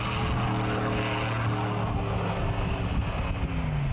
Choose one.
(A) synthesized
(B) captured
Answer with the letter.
B